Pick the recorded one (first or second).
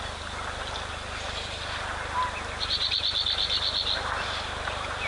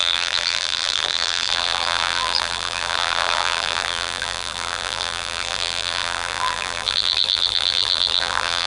first